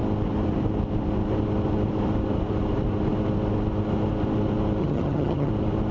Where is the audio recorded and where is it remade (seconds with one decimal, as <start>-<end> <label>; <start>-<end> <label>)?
0.0-4.8 recorded; 4.8-5.5 remade; 5.5-5.9 recorded